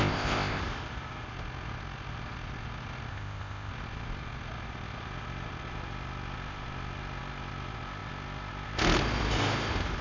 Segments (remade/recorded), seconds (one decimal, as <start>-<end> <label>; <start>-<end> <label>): 0.0-0.6 remade; 0.6-3.1 recorded; 3.1-3.7 remade; 3.7-10.0 recorded